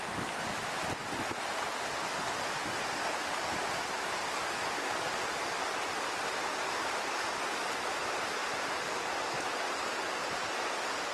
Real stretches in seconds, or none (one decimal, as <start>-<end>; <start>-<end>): 0.0-0.5; 1.2-11.1